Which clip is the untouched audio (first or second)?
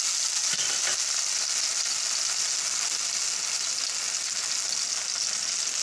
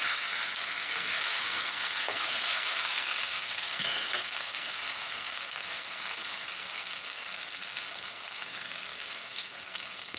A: first